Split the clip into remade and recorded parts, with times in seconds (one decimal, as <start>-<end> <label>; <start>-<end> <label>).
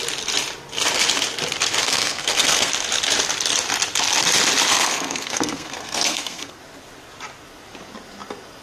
0.0-1.8 recorded; 1.8-2.7 remade; 2.7-4.7 recorded; 4.7-6.6 remade; 6.6-8.6 recorded